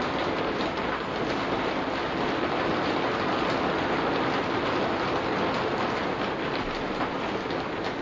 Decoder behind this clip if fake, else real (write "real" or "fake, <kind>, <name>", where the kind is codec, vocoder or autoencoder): real